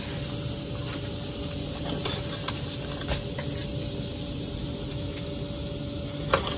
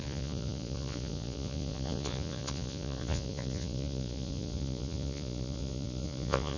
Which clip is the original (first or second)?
first